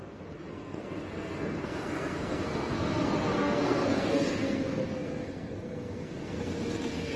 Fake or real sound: fake